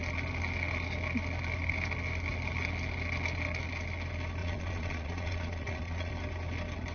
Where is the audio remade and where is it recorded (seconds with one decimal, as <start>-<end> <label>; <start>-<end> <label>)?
0.0-4.4 recorded; 4.4-6.1 remade; 6.1-6.9 recorded